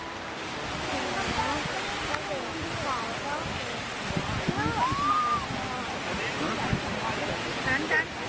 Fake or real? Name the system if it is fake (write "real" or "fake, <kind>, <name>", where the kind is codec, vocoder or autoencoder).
real